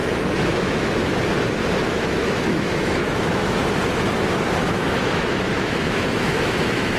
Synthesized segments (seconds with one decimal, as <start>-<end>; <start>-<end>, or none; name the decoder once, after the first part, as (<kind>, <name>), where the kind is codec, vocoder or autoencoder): 0.0-1.1 (autoencoder, DAC-VAE); 1.8-3.6; 4.6-7.0